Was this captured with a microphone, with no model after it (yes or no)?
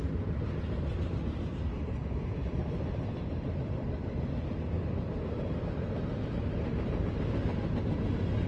yes